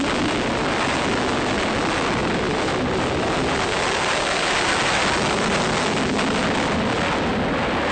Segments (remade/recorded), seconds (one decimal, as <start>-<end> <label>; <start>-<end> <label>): 0.0-7.9 recorded